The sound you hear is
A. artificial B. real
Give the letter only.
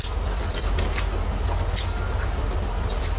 B